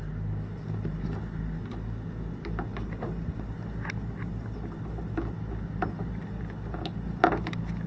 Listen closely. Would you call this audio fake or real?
real